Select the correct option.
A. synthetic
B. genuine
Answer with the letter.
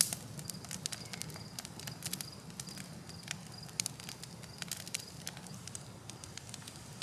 B